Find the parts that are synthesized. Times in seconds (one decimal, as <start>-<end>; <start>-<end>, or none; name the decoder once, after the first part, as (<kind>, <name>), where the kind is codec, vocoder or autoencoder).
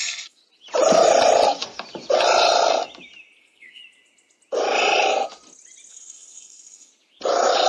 0.0-0.4 (codec, SNAC); 3.4-3.8; 5.9-6.9